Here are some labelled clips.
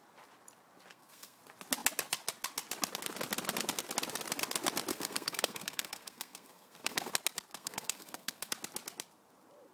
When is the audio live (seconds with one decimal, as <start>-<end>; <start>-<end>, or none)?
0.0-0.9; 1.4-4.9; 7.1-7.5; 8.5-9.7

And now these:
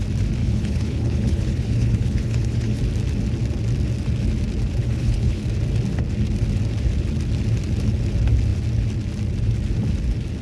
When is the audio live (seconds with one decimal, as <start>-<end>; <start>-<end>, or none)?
0.0-0.4; 2.8-4.8; 5.4-10.4

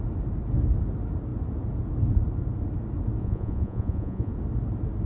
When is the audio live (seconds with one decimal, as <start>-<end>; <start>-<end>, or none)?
0.0-3.2; 4.3-5.1